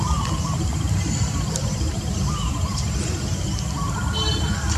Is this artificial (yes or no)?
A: no